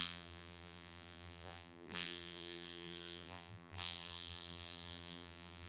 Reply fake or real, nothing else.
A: fake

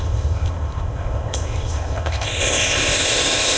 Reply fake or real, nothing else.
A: fake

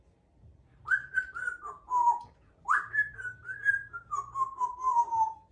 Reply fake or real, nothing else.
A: fake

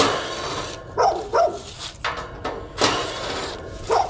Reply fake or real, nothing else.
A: real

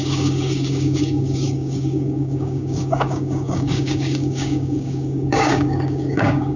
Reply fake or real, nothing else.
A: fake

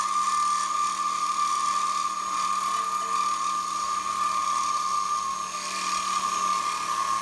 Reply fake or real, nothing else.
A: real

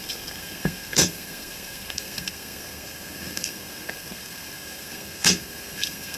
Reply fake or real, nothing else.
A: fake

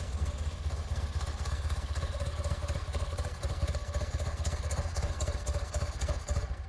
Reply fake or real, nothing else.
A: fake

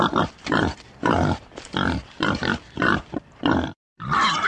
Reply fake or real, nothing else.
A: fake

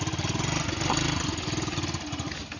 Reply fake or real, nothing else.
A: real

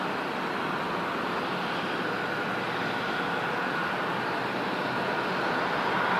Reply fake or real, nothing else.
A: real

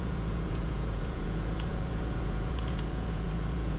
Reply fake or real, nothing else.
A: fake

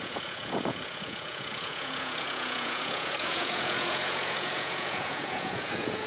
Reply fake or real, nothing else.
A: fake